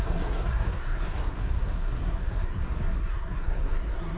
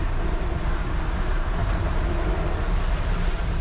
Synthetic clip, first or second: first